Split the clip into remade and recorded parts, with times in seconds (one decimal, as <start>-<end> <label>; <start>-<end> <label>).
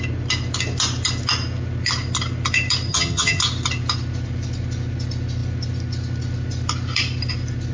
0.0-2.9 recorded; 2.9-3.4 remade; 3.4-7.7 recorded